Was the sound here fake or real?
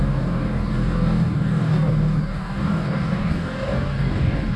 fake